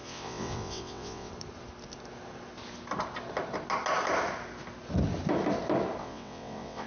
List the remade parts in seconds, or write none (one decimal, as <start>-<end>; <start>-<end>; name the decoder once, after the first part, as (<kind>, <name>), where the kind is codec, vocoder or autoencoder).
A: 0.0-1.3 (vocoder, WaveNeXt); 6.0-6.9